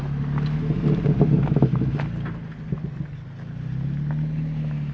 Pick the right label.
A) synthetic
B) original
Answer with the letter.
B